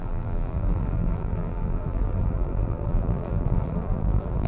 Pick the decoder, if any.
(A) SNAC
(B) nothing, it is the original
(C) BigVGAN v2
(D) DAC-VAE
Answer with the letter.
C